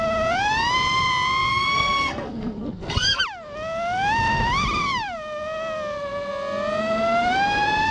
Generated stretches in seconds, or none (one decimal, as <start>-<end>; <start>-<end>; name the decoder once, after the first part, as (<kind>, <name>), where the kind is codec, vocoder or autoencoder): 1.5-3.2 (codec, SNAC)